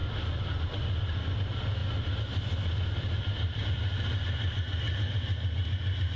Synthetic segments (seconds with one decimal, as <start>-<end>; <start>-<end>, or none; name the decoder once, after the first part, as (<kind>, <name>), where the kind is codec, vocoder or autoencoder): 1.8-3.8 (vocoder, BigVGAN v2)